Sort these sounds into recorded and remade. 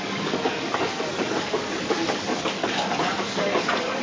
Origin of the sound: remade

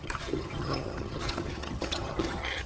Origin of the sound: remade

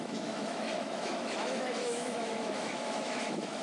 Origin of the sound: remade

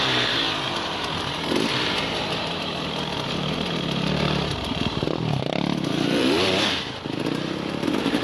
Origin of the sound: remade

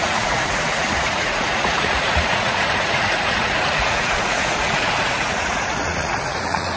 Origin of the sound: remade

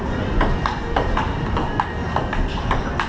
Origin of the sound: recorded